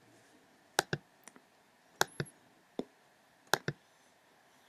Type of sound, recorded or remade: recorded